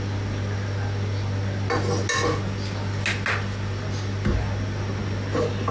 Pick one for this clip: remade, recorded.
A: recorded